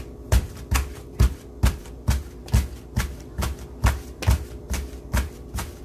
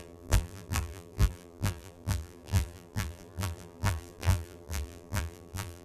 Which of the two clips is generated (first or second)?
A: second